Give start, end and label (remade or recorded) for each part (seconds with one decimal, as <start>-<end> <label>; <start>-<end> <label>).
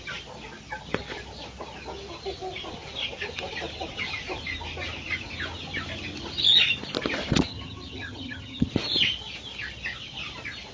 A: 0.0-7.5 recorded; 7.5-8.7 remade; 8.7-10.7 recorded